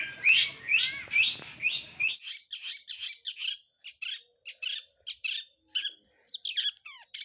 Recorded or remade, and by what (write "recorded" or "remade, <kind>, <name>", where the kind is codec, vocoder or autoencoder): recorded